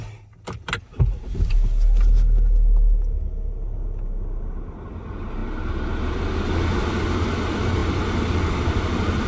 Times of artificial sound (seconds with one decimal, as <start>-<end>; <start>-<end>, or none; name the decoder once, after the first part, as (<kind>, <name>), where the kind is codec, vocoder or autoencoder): none